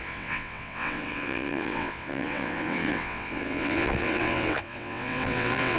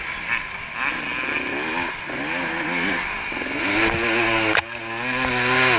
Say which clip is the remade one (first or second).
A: first